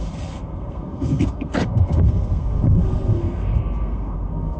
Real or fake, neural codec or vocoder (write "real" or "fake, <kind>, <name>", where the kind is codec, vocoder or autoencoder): fake, codec, SNAC